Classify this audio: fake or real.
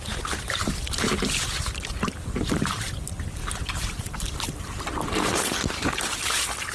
fake